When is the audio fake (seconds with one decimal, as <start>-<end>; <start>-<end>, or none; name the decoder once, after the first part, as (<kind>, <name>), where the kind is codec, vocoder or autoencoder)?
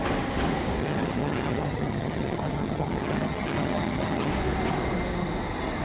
0.8-4.3 (vocoder, HiFi-GAN)